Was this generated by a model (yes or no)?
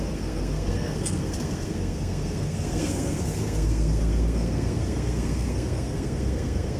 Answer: yes